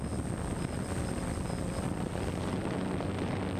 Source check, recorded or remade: recorded